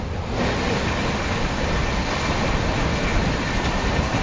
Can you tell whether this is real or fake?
real